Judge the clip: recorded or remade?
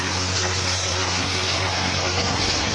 remade